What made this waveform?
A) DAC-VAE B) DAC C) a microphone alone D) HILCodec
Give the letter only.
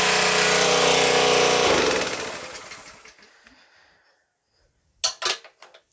C